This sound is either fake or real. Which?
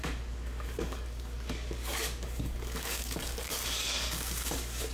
fake